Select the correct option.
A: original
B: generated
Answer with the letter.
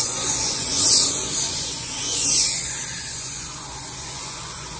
B